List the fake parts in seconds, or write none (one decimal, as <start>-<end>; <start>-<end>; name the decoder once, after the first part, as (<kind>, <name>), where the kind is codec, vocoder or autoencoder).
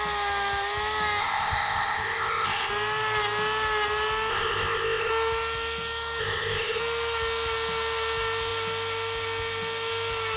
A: 1.2-2.7 (codec, ZipCodec); 4.3-5.1; 6.2-6.8